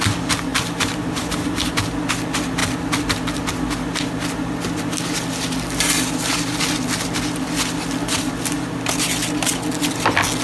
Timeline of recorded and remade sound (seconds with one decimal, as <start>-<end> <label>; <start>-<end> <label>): 0.0-0.5 recorded; 0.5-1.7 remade; 1.7-10.4 recorded